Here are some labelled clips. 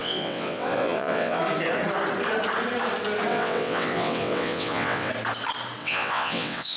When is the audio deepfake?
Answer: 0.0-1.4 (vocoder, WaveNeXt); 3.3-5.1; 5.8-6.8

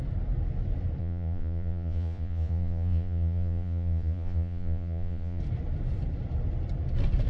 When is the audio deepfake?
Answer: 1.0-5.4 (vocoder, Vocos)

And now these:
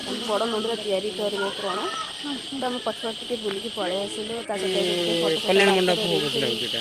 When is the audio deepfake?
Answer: 1.6-5.7 (vocoder, BigVGAN v2)

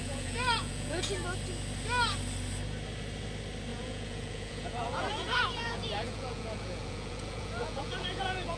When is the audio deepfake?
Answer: 0.0-1.1 (vocoder, Vocos); 3.7-8.6

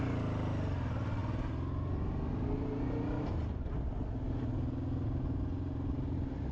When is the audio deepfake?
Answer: none

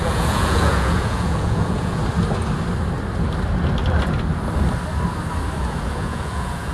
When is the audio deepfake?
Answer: 0.0-2.0 (vocoder, Vocos); 5.6-6.7